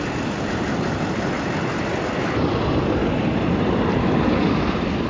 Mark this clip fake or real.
real